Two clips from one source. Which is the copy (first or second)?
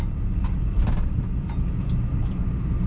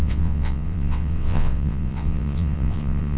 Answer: second